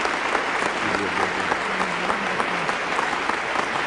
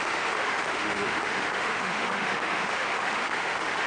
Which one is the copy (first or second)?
second